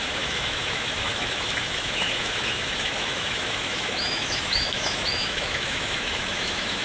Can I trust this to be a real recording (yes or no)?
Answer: no